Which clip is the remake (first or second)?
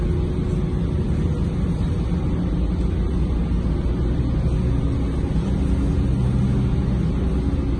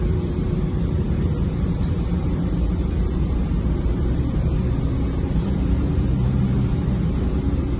second